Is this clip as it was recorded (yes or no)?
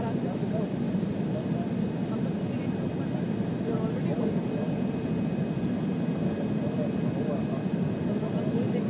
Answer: yes